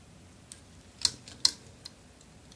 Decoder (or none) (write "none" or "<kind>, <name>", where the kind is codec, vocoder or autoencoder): none